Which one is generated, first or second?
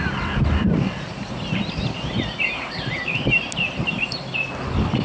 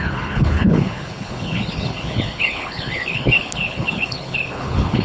second